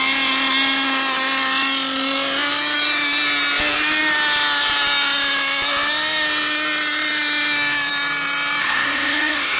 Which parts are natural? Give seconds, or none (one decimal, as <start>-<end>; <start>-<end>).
0.0-8.6